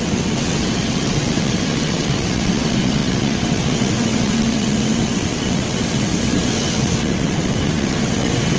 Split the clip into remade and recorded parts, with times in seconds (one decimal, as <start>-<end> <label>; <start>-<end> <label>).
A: 0.0-8.6 remade